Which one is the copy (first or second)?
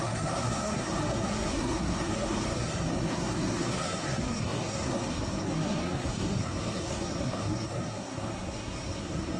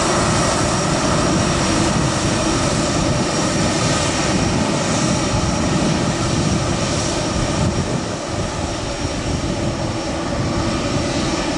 first